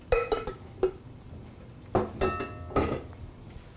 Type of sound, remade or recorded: recorded